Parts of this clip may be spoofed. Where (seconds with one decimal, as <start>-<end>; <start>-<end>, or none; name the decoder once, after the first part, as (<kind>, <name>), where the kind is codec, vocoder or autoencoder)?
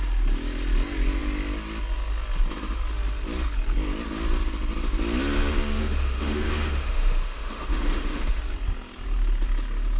5.8-8.4 (autoencoder, DAC-VAE)